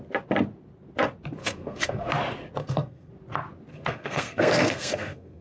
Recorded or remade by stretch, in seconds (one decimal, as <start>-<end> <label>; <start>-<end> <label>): 0.0-1.4 recorded; 1.4-2.1 remade; 2.1-2.6 recorded; 2.6-3.1 remade; 3.1-3.7 recorded; 3.7-5.4 remade